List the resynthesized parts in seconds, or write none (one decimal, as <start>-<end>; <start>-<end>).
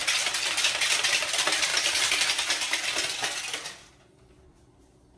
none